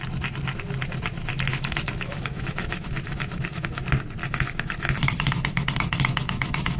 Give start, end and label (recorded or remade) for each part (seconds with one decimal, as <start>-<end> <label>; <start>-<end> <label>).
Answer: 0.0-1.5 recorded; 1.5-3.8 remade; 3.8-4.2 recorded; 4.2-6.8 remade

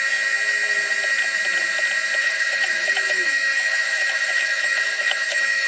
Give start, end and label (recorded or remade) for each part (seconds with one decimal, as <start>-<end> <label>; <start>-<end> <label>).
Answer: 0.0-2.2 recorded; 2.2-5.7 remade

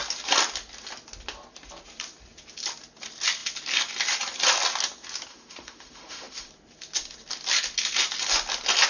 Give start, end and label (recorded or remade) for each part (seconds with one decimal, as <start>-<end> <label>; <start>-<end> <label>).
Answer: 0.0-5.3 recorded; 5.3-6.5 remade; 6.5-8.9 recorded

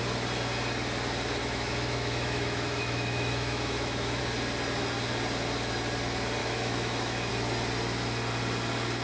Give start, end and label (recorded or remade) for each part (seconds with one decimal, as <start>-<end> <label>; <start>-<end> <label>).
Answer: 0.0-1.4 recorded; 1.4-4.2 remade; 4.2-6.4 recorded; 6.4-7.3 remade; 7.3-9.0 recorded

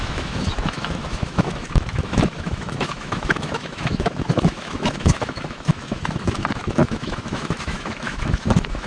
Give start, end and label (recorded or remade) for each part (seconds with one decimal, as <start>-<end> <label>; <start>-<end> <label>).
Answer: 0.0-8.9 remade